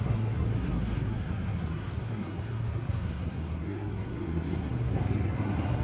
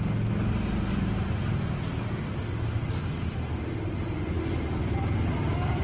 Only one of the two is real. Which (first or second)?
second